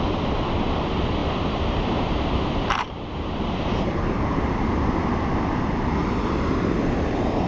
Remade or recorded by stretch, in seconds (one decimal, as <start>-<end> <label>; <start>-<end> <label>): 0.0-1.2 recorded; 1.2-4.5 remade; 4.5-6.0 recorded; 6.0-7.5 remade